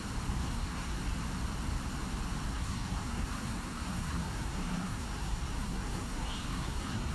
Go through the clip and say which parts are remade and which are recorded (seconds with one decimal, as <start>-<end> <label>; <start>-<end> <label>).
0.0-0.4 recorded; 0.4-1.0 remade; 1.0-2.5 recorded; 2.5-7.1 remade

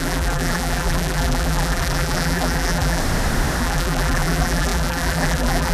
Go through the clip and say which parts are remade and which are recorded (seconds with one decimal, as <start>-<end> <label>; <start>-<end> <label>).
0.0-3.0 remade; 3.0-3.6 recorded; 3.6-5.7 remade

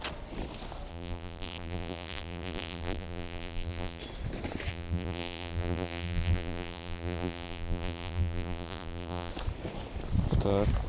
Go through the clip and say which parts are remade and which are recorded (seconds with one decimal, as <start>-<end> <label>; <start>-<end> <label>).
0.0-0.9 recorded; 0.9-4.0 remade; 4.0-4.7 recorded; 4.7-9.3 remade; 9.3-10.9 recorded

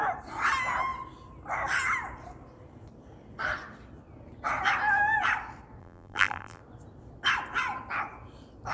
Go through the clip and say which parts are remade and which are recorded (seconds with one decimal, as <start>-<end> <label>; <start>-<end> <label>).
0.0-5.8 recorded; 5.8-6.6 remade; 6.6-8.7 recorded

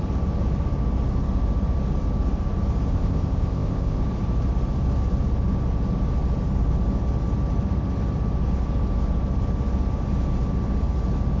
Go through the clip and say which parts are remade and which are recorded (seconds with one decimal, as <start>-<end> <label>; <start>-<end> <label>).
0.0-2.9 recorded; 2.9-4.0 remade; 4.0-11.4 recorded

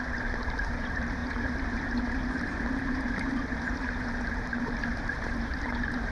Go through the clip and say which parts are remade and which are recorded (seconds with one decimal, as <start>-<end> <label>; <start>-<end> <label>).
0.0-6.1 remade

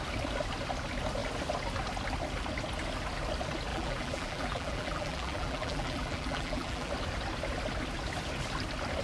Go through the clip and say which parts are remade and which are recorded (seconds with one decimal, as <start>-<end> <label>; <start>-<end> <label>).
0.0-3.7 recorded; 3.7-6.9 remade; 6.9-9.0 recorded

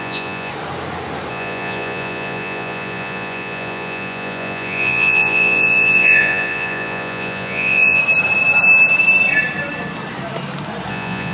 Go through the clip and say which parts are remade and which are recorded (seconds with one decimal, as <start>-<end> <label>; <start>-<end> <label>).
0.0-0.5 remade; 0.5-1.3 recorded; 1.3-8.0 remade; 8.0-10.9 recorded; 10.9-11.3 remade